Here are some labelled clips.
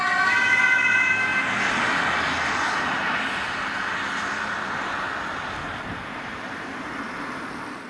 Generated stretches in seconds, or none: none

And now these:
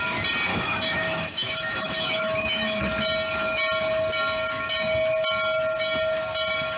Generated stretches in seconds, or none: 0.5-2.9 (autoencoder, DAC-VAE)

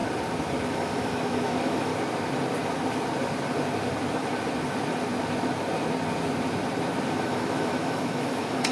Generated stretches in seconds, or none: 0.7-1.9 (autoencoder, DAC-VAE); 7.1-8.7

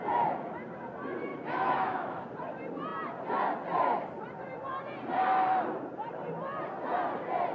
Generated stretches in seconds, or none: 1.3-2.3 (autoencoder, DAC-VAE)

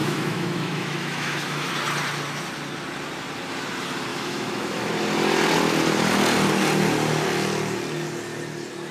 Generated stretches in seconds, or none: 0.0-1.7 (autoencoder, DAC-VAE); 4.1-4.9